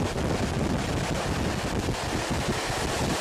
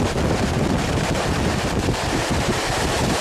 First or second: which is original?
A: first